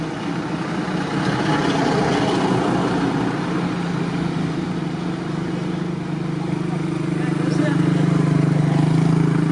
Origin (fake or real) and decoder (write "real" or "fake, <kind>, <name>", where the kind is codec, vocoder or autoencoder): real